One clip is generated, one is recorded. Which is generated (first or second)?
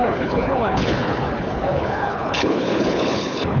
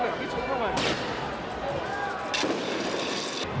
first